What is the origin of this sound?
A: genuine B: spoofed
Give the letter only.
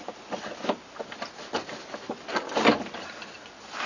B